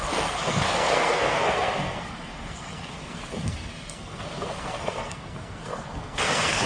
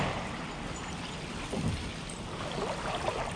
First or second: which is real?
second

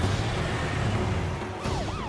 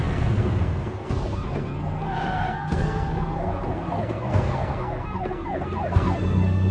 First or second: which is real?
first